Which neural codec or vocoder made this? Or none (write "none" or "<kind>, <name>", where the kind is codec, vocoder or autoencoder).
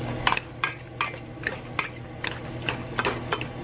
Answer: none